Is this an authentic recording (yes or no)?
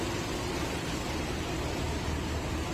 yes